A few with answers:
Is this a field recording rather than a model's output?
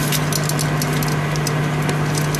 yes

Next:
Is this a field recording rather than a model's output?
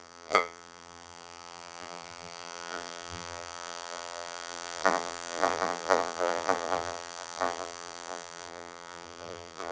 no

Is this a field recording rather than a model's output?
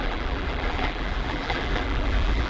no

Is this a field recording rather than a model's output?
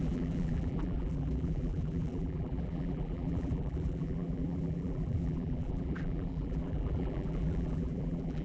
no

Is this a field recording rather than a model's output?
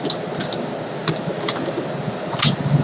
yes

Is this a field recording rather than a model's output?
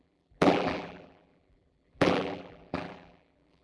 no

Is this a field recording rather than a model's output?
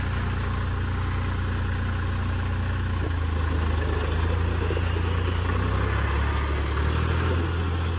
yes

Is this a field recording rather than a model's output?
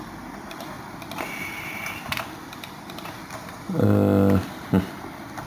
no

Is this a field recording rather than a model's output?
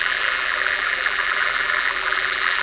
no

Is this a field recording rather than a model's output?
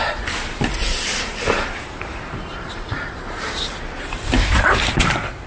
no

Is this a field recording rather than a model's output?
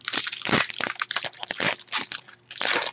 no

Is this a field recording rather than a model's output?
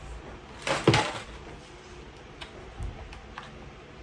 yes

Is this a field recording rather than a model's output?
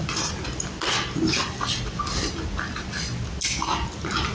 yes